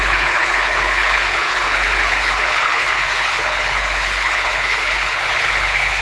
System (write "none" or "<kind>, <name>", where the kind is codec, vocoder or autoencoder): codec, HILCodec